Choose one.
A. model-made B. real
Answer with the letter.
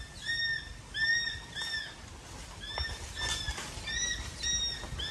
B